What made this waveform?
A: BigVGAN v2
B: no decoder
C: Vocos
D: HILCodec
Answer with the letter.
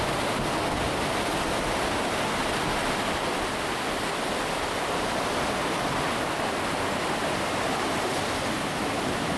B